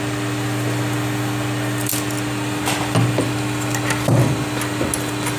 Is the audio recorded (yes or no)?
yes